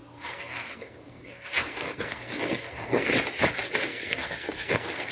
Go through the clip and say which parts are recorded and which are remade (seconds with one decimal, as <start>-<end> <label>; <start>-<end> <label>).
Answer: 0.0-3.1 remade; 3.1-3.9 recorded; 3.9-5.1 remade